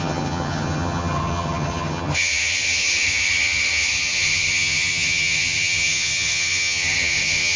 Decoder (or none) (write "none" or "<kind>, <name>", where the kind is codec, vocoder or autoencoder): vocoder, HiFi-GAN